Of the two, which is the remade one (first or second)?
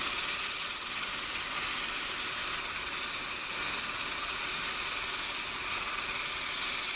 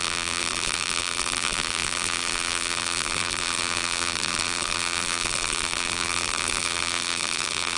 second